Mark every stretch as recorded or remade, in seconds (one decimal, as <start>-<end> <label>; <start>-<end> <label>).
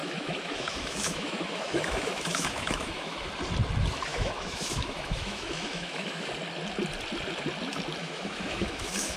0.0-3.3 remade; 3.3-4.1 recorded; 4.1-6.3 remade; 6.3-8.0 recorded; 8.0-9.2 remade